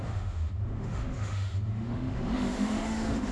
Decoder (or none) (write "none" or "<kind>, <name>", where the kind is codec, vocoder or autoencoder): autoencoder, DAC-VAE